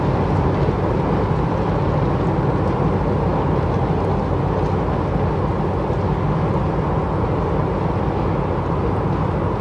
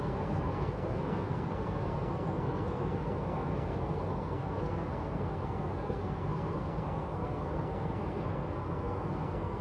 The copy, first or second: second